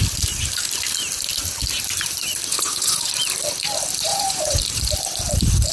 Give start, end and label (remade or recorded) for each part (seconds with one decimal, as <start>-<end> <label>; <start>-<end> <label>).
0.0-2.5 recorded; 2.5-3.1 remade; 3.1-4.1 recorded; 4.1-4.6 remade; 4.6-5.7 recorded